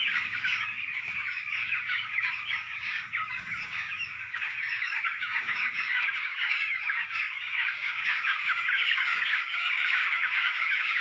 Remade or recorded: remade